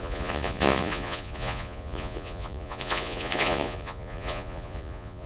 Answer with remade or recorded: remade